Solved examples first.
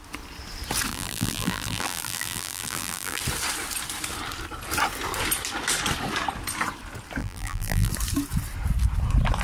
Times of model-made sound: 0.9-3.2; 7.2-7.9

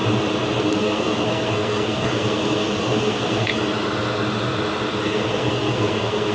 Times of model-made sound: 0.6-3.5; 5.0-6.3

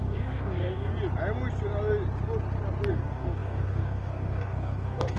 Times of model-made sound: 0.0-0.9; 2.9-5.2

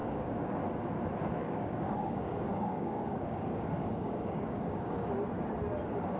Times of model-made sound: 0.0-0.6; 1.4-5.1

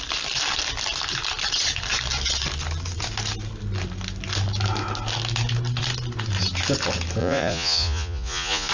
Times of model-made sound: 7.2-8.7